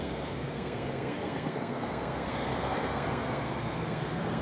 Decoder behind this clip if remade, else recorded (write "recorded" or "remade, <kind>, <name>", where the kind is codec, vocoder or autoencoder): remade, codec, SNAC